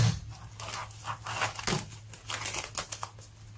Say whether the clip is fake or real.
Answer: real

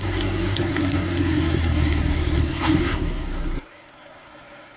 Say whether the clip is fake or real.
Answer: fake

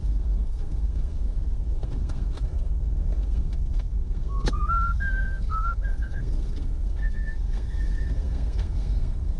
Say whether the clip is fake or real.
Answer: fake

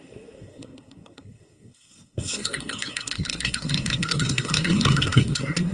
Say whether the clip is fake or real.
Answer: fake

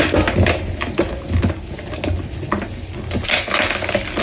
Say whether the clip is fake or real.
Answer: real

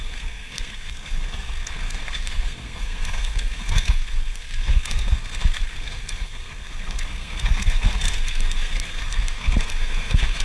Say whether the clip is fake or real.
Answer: fake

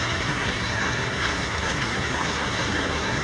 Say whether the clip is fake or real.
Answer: fake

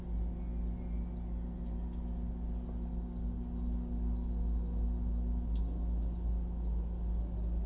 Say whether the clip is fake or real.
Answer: real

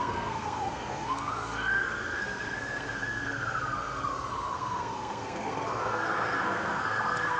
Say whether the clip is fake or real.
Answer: fake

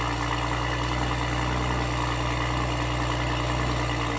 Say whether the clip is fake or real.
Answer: real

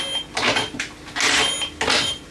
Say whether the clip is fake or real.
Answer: real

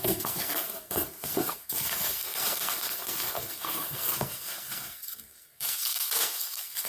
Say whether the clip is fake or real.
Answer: fake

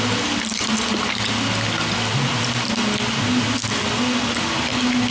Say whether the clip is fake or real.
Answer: real